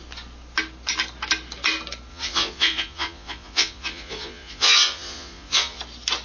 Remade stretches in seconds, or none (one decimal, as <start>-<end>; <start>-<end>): 2.1-5.8